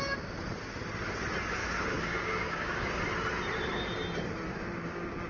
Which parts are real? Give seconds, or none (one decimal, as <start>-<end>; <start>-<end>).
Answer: 0.0-1.6; 3.0-4.5